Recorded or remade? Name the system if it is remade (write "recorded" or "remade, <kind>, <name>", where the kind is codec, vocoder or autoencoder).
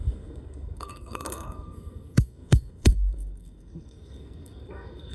remade, codec, SNAC